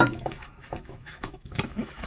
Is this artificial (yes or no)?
yes